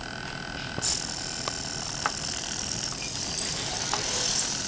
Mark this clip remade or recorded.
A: recorded